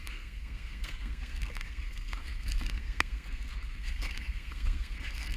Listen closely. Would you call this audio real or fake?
fake